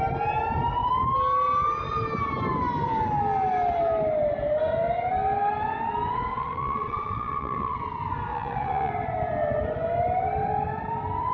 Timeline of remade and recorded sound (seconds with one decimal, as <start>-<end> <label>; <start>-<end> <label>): 0.0-6.3 recorded; 6.3-7.8 remade; 7.8-8.3 recorded; 8.3-8.9 remade; 8.9-11.3 recorded